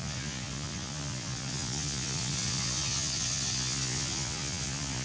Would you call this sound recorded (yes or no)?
no